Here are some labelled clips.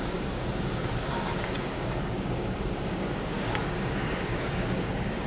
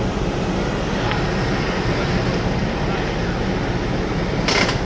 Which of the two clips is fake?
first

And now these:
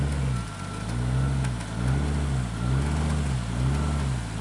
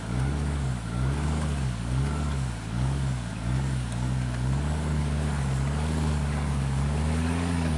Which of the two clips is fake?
second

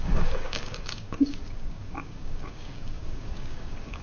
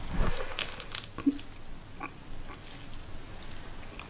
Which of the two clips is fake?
first